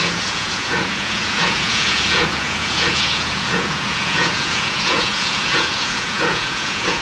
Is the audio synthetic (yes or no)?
yes